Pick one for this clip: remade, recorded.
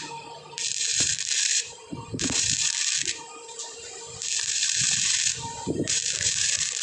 remade